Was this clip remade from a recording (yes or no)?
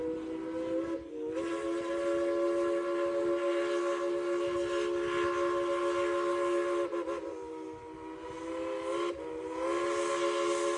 no